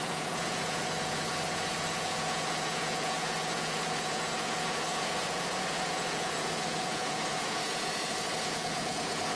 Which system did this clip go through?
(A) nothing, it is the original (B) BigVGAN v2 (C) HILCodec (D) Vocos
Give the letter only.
D